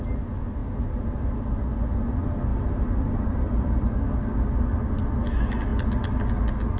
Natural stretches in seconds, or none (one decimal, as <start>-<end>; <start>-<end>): 0.0-0.6; 1.3-2.5; 3.9-6.8